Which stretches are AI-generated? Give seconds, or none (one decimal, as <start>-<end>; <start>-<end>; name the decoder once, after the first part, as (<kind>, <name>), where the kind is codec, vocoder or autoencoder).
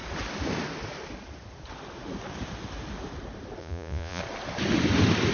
3.6-4.2 (vocoder, Vocos)